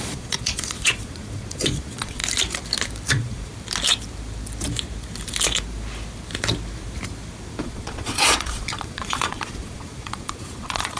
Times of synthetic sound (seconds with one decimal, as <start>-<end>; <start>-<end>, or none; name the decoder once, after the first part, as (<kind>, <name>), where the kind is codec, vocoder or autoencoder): 0.0-2.2 (vocoder, Vocos); 3.1-3.5; 7.6-11.0